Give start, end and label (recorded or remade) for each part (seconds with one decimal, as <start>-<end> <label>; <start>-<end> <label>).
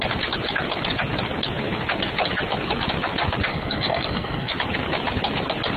0.0-3.5 recorded; 3.5-4.5 remade; 4.5-5.8 recorded